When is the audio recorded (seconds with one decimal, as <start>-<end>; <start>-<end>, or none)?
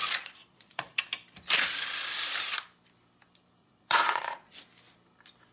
1.0-3.6; 4.5-5.5